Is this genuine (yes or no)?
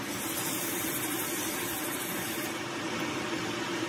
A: yes